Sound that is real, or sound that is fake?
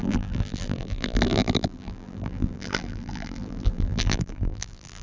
fake